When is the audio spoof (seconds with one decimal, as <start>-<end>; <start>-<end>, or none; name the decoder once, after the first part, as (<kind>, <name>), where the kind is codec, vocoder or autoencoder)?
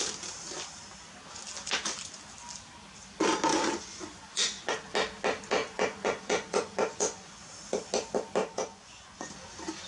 3.5-4.7 (vocoder, Vocos); 5.6-7.5; 8.4-9.3